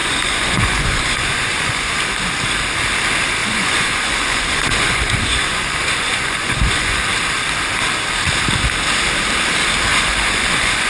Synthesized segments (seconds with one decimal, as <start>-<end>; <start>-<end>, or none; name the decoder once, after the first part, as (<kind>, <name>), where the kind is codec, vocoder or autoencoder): 0.0-1.9 (vocoder, Vocos); 3.4-7.0; 9.9-10.9